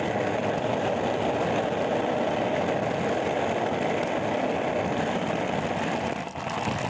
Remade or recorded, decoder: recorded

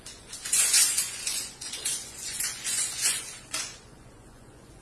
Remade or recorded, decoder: remade, vocoder, Vocos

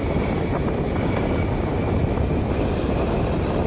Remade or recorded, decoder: recorded